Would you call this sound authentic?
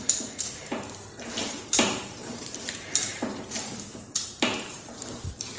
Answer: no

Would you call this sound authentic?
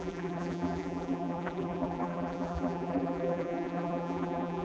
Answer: no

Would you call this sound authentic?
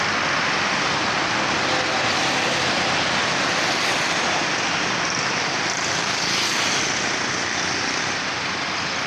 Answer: yes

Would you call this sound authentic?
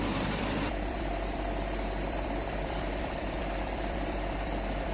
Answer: no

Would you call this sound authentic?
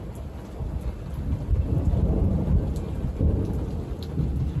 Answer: yes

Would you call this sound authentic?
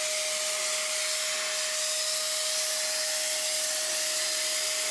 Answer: yes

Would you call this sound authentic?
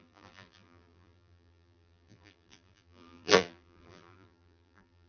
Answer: no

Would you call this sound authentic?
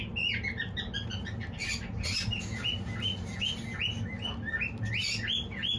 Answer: yes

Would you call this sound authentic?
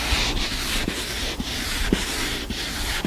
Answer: no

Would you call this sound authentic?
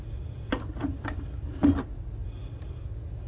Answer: yes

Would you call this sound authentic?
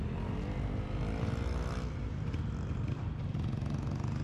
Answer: yes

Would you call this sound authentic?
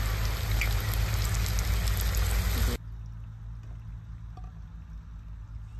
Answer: yes